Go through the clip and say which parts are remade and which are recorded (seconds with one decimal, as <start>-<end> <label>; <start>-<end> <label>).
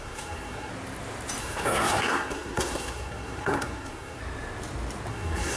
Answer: 0.0-0.7 remade; 0.7-1.4 recorded; 1.4-4.2 remade; 4.2-5.1 recorded; 5.1-5.6 remade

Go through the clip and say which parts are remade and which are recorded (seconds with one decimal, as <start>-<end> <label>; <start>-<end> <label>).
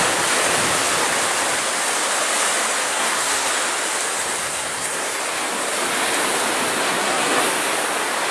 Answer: 0.0-2.9 recorded; 2.9-3.5 remade; 3.5-4.4 recorded; 4.4-5.2 remade; 5.2-6.8 recorded; 6.8-7.4 remade; 7.4-8.3 recorded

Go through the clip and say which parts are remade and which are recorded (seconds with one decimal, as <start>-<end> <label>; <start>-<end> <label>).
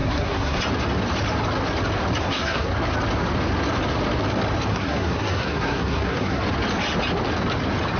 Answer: 0.0-0.6 remade; 0.6-2.2 recorded; 2.2-2.7 remade; 2.7-4.7 recorded; 4.7-6.4 remade; 6.4-8.0 recorded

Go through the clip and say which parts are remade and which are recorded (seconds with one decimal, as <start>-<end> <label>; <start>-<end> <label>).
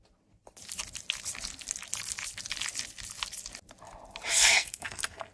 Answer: 0.0-4.3 recorded; 4.3-5.3 remade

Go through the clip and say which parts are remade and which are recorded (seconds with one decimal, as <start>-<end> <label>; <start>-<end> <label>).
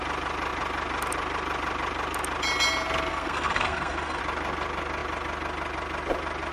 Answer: 0.0-3.1 recorded; 3.1-4.2 remade; 4.2-6.5 recorded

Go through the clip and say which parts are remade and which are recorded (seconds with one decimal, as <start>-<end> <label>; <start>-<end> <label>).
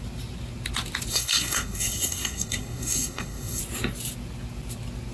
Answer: 0.0-1.1 recorded; 1.1-3.6 remade; 3.6-5.1 recorded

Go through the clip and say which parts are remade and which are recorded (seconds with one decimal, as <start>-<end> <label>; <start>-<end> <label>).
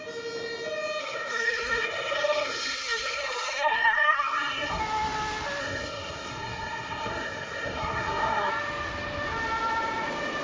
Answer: 0.0-1.0 recorded; 1.0-4.8 remade; 4.8-5.6 recorded; 5.6-8.5 remade; 8.5-10.4 recorded